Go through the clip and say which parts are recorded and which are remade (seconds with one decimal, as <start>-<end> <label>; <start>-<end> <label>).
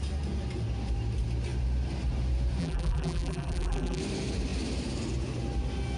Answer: 0.0-2.6 recorded; 2.6-4.0 remade; 4.0-6.0 recorded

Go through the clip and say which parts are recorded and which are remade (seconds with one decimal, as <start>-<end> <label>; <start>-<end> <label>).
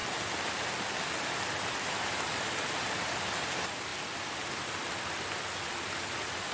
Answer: 0.0-6.5 recorded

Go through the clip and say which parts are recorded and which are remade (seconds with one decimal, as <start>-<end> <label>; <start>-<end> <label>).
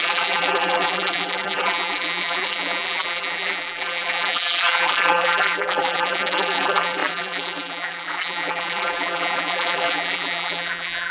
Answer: 0.0-11.1 remade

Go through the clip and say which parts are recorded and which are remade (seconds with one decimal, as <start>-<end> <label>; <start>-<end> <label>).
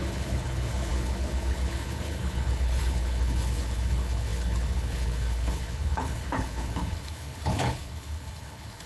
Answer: 0.0-8.9 remade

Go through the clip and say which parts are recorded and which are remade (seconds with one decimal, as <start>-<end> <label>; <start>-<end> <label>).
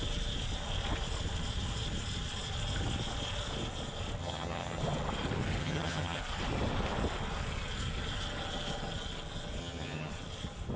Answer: 0.0-4.2 recorded; 4.2-4.8 remade; 4.8-5.6 recorded; 5.6-6.2 remade; 6.2-9.6 recorded; 9.6-10.1 remade; 10.1-10.8 recorded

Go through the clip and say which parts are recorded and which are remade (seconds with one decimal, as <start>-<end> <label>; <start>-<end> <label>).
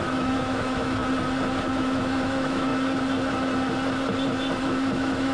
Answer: 0.0-1.0 remade; 1.0-1.7 recorded; 1.7-2.7 remade; 2.7-4.6 recorded; 4.6-5.3 remade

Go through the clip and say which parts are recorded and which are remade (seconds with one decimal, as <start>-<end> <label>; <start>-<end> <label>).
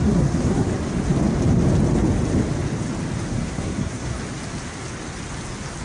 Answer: 0.0-0.7 remade; 0.7-3.3 recorded; 3.3-4.2 remade; 4.2-5.8 recorded